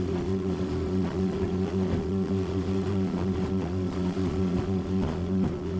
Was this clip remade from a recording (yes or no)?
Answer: yes